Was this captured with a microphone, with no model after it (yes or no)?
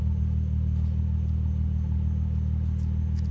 yes